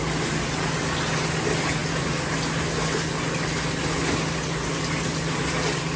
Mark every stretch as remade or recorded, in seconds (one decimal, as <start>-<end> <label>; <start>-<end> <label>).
0.0-6.0 recorded